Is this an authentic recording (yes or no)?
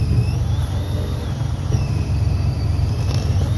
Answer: no